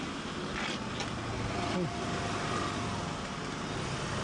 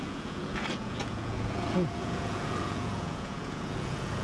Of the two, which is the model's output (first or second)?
second